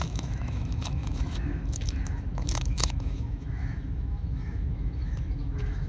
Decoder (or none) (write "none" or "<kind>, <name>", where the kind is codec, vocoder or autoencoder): autoencoder, DAC-VAE